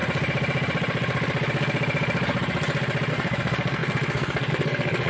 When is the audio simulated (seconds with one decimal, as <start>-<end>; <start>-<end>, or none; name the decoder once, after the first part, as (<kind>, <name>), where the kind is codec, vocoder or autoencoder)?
3.1-5.1 (codec, SNAC)